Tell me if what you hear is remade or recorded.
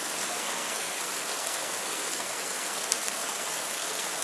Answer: remade